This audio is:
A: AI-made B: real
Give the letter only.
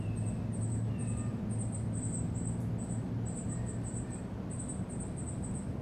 B